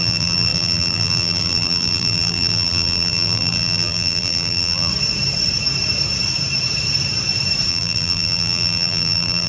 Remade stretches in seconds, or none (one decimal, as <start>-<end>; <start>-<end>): 0.0-4.9; 7.7-9.5